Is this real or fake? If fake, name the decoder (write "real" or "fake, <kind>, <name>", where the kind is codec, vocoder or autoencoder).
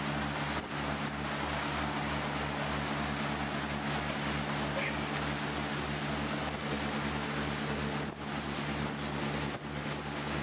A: real